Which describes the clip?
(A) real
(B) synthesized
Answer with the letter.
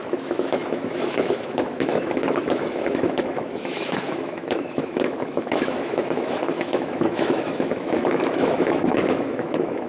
B